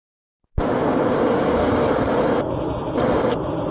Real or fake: real